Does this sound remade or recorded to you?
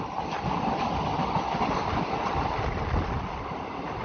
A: recorded